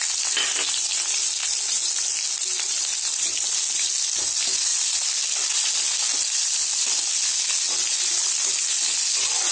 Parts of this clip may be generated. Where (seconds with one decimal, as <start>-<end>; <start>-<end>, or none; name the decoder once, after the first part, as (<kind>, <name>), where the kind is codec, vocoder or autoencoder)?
none